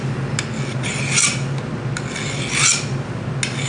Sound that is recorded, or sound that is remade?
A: recorded